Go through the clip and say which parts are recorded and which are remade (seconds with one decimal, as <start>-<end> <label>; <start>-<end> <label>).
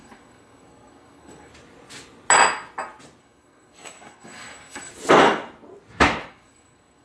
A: 0.0-1.5 remade; 1.5-3.2 recorded; 3.2-4.9 remade; 4.9-6.3 recorded; 6.3-7.0 remade